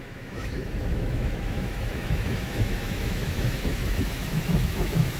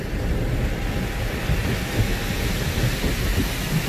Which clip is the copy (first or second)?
first